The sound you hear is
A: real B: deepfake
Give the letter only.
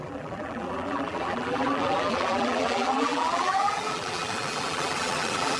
B